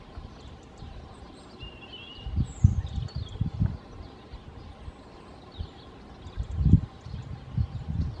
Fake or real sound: real